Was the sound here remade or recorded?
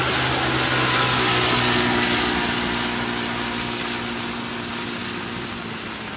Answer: recorded